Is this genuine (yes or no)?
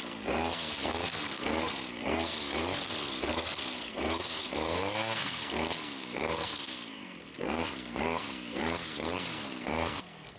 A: no